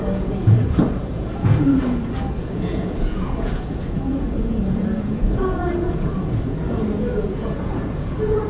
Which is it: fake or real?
fake